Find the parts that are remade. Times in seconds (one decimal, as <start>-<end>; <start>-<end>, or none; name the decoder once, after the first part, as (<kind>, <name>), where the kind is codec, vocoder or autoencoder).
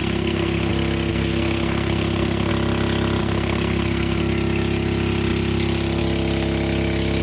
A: 0.0-0.7 (codec, SNAC); 1.1-2.5; 3.2-4.2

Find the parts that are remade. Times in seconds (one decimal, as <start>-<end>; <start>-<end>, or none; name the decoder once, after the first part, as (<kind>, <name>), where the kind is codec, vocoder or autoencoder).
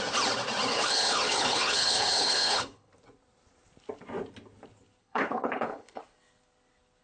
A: 0.7-2.9 (codec, HILCodec); 5.0-6.0